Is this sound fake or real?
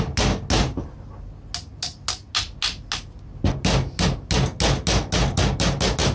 real